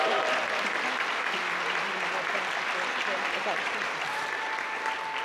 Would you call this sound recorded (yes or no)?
yes